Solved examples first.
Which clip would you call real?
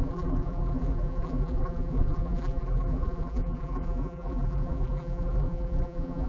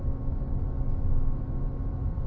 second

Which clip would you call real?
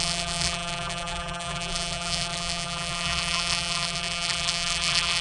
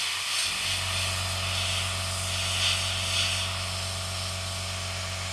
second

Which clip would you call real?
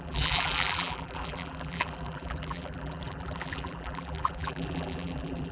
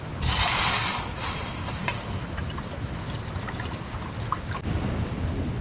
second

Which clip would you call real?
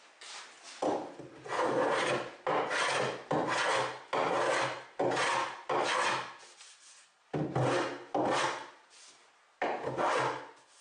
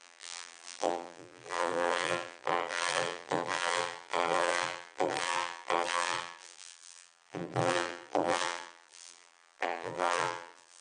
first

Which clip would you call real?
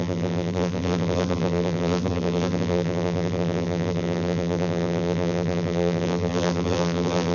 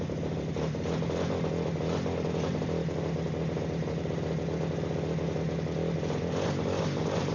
second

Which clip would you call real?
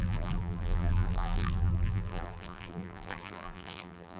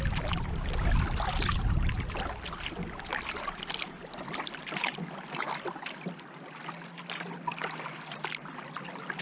second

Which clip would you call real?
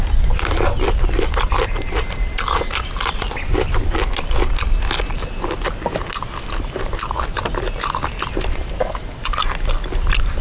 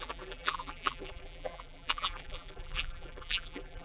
first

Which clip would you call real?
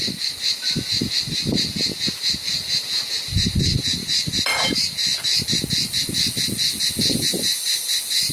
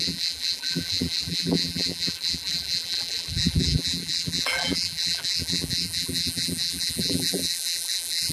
first